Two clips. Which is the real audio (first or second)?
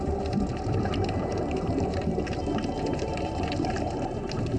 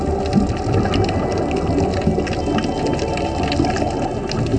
second